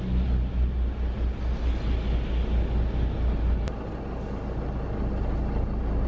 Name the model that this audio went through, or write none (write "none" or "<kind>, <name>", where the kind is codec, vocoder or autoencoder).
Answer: none